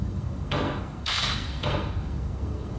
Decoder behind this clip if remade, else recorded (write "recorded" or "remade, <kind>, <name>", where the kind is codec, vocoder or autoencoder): remade, codec, SNAC